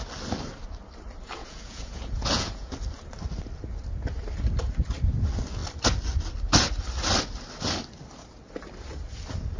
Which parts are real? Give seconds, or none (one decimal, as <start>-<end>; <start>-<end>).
0.0-1.4; 2.7-9.6